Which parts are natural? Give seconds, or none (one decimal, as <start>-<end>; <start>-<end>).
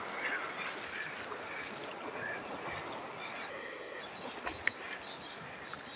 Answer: 0.0-3.5; 4.0-6.0